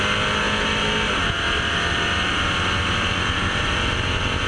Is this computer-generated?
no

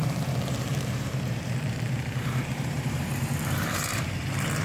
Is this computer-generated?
yes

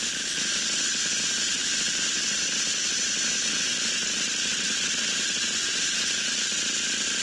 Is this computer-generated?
no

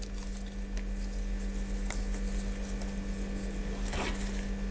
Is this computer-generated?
no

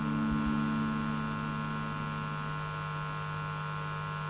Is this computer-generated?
no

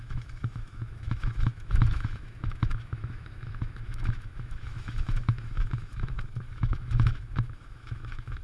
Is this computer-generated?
yes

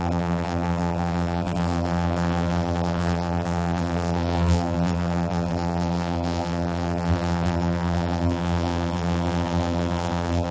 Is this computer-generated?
yes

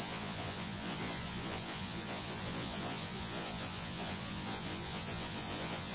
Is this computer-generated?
yes